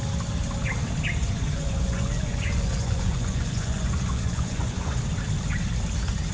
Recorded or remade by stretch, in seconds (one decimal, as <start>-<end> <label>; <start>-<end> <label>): 0.0-1.2 recorded; 1.2-5.0 remade; 5.0-6.3 recorded